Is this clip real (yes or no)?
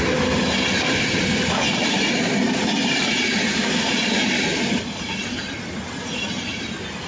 yes